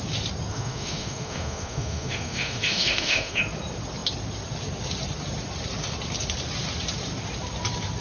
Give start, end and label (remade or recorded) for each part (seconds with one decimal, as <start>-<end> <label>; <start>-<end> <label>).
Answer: 0.0-0.5 recorded; 0.5-3.4 remade; 3.4-8.0 recorded